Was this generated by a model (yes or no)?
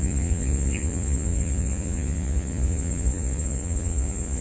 yes